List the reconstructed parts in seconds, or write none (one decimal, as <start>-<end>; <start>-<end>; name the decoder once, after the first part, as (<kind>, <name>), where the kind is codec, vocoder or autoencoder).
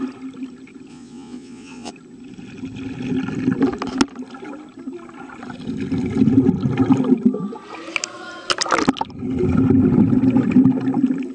0.9-1.9 (vocoder, Vocos)